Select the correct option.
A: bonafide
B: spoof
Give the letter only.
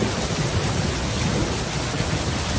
A